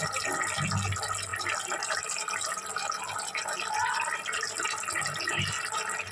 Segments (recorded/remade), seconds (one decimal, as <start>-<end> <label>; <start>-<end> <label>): 0.0-6.1 recorded